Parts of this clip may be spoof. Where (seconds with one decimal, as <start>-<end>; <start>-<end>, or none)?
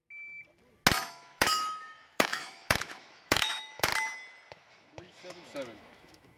1.0-3.9; 4.5-6.4